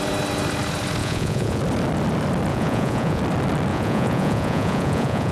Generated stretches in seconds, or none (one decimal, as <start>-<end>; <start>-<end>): 1.0-1.6; 2.5-3.2; 3.7-5.3